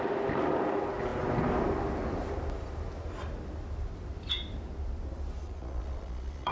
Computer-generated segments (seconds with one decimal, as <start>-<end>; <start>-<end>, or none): 5.4-6.5